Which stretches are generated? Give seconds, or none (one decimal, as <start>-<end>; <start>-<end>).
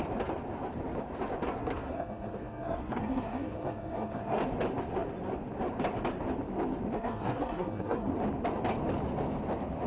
1.6-4.4; 6.9-8.1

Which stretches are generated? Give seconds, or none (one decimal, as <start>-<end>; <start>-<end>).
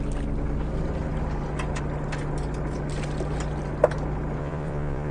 4.4-5.1